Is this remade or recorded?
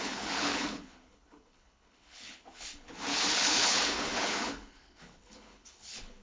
remade